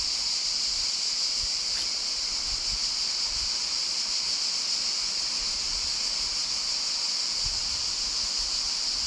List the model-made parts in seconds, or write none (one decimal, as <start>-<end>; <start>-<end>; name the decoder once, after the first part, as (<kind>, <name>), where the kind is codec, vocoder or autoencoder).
none